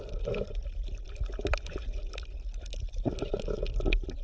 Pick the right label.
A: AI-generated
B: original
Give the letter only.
B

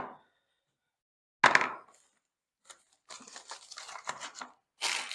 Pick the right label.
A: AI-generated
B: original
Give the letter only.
B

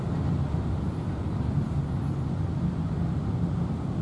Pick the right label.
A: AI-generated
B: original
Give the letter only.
B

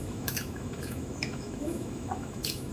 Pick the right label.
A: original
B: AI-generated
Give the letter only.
B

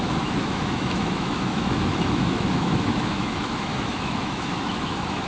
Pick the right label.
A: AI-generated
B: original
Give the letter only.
A